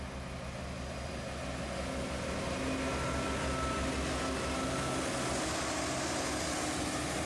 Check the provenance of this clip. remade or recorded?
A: recorded